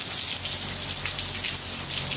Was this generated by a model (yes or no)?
no